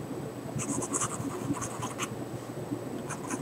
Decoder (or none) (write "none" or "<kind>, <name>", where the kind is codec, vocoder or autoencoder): none